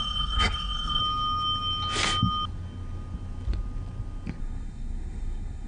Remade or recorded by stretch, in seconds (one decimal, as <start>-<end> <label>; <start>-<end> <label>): 0.0-1.0 remade; 1.0-4.4 recorded; 4.4-5.7 remade